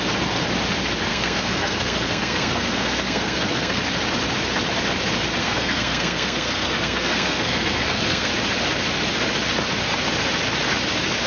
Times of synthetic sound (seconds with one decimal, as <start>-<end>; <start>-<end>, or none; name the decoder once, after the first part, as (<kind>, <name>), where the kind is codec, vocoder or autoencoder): 1.1-3.8 (codec, SNAC); 5.4-8.3